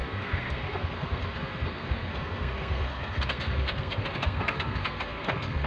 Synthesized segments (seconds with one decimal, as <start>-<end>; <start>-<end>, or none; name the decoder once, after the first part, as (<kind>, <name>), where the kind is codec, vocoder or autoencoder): 0.0-5.7 (codec, SNAC)